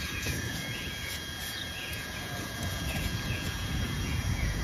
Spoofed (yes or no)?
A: yes